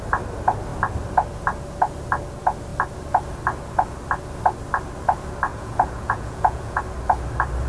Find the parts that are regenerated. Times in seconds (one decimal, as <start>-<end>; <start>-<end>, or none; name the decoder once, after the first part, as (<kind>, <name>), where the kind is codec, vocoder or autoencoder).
5.5-6.8 (vocoder, Vocos)